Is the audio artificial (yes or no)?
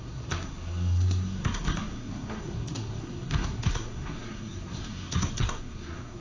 yes